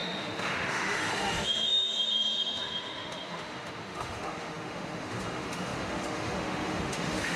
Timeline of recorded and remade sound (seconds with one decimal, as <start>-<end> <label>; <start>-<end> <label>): 0.0-7.4 remade